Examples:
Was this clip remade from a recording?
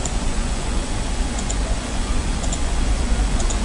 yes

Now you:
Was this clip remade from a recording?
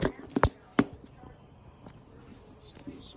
no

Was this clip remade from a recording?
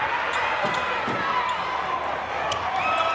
no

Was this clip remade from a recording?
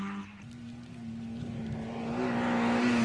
no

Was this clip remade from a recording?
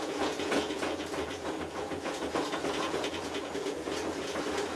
yes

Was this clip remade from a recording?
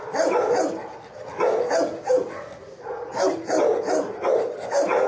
no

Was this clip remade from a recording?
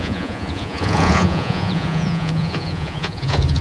yes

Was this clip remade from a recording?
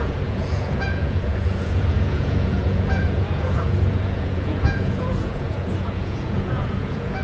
yes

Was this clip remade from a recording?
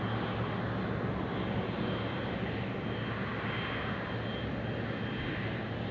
no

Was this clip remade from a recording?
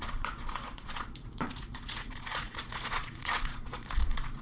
yes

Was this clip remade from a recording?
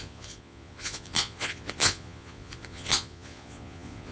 yes